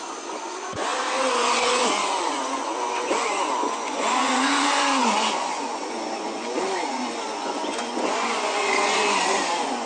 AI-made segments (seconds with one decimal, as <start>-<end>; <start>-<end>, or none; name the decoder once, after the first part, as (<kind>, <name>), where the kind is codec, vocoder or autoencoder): 0.0-9.9 (vocoder, Vocos)